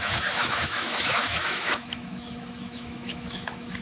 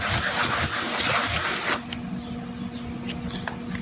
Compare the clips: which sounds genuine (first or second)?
second